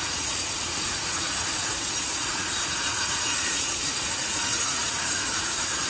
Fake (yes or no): yes